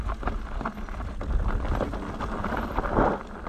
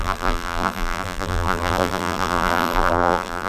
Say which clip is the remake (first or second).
second